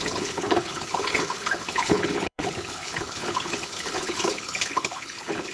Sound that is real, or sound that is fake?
fake